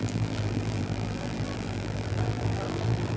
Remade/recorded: remade